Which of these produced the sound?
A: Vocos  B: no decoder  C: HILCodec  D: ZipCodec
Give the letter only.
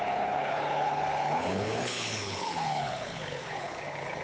C